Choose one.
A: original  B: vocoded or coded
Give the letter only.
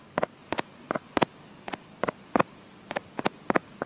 A